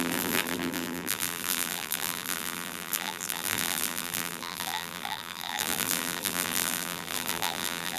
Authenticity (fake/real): fake